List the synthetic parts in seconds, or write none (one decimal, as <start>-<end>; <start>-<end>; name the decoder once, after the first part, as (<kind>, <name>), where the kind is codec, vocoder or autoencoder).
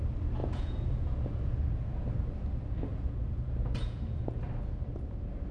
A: 0.4-2.1 (vocoder, Vocos); 2.9-4.5